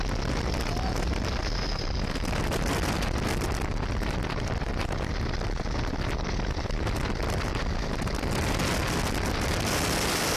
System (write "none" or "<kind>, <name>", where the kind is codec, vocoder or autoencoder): none